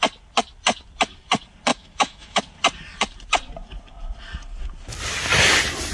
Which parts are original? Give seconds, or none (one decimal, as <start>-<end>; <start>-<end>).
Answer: 0.0-1.7; 2.4-5.9